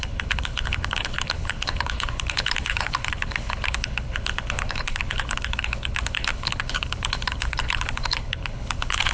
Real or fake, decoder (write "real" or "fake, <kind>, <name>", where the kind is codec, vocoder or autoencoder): fake, codec, HILCodec